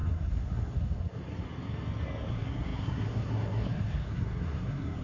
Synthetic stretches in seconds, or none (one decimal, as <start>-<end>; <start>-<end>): 0.0-1.2; 2.3-5.0